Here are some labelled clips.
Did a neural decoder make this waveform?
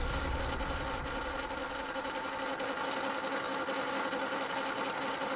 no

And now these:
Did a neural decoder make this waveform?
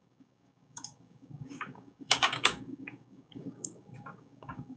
yes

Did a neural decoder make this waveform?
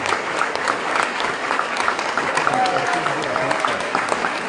yes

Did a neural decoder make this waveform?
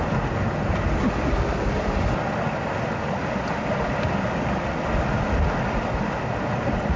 no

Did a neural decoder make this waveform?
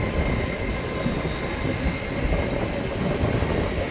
no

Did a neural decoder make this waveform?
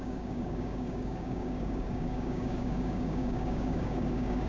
yes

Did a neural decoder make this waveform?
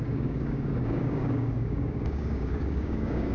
yes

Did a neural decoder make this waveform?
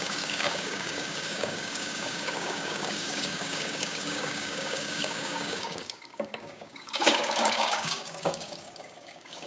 yes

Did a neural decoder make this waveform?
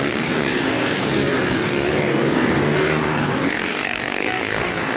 yes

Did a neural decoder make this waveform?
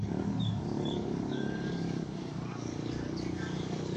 yes